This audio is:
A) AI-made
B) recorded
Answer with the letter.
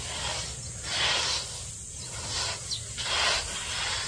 B